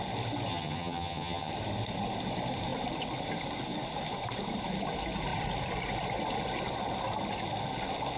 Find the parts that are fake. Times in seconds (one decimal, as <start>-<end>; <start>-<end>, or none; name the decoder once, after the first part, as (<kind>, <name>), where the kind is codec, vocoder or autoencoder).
0.5-1.5 (vocoder, HiFi-GAN)